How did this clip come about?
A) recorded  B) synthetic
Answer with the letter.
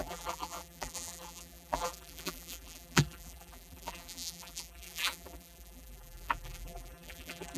B